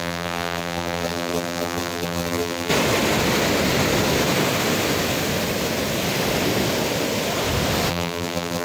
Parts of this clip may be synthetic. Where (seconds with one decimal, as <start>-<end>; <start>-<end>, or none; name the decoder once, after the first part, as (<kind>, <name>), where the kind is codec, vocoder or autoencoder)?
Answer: 0.0-2.7 (vocoder, BigVGAN v2); 7.9-8.6